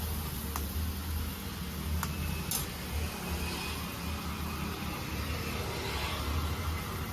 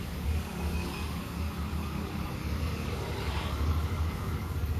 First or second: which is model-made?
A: second